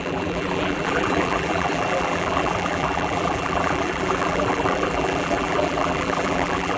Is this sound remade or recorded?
remade